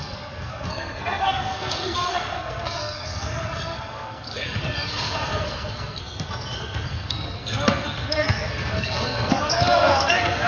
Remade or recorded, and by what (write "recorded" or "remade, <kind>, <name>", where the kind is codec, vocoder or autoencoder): remade, codec, SNAC